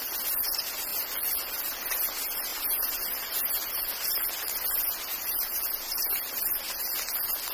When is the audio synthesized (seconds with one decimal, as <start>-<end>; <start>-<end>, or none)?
0.9-1.6; 2.5-3.9; 5.1-5.7